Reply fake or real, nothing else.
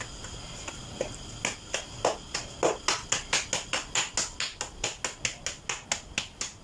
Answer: real